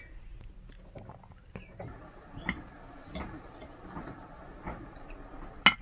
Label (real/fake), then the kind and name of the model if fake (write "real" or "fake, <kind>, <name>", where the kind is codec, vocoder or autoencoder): real